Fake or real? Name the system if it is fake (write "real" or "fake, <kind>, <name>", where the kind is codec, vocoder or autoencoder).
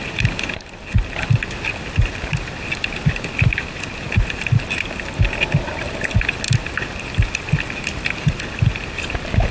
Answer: real